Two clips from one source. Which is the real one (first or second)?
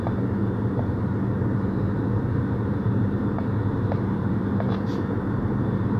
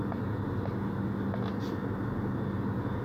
second